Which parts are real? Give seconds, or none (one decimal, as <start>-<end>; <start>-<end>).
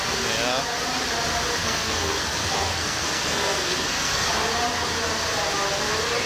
0.0-1.6; 4.3-6.3